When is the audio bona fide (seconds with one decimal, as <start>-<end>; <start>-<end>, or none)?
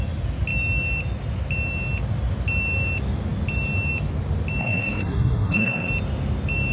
0.0-4.6; 5.9-6.7